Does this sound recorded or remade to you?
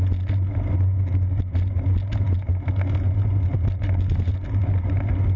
recorded